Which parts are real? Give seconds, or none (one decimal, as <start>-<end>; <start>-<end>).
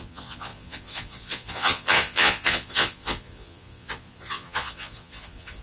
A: none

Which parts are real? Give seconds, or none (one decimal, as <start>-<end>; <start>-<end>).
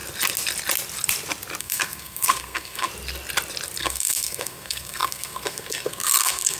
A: 0.0-1.6; 2.9-3.8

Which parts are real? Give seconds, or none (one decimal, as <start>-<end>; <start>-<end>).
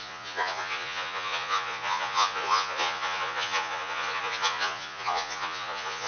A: none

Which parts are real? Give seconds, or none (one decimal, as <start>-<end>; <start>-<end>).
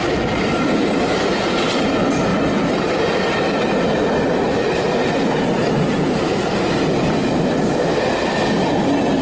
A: 0.0-9.2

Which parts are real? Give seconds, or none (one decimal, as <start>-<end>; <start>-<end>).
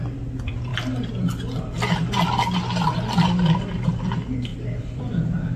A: 0.0-0.7; 4.1-4.5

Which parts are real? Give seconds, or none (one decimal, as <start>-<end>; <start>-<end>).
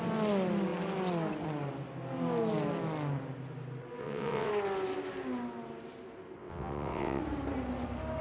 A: 0.0-4.0; 4.5-6.4; 7.2-8.2